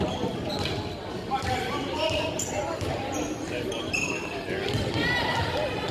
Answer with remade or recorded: remade